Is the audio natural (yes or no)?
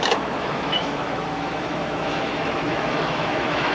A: no